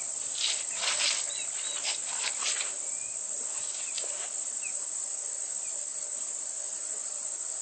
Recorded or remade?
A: remade